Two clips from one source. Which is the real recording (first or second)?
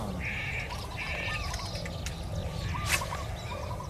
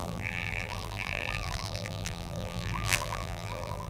first